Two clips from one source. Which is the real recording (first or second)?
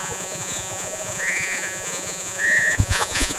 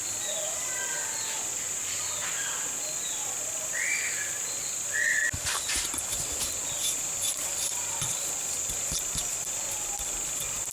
second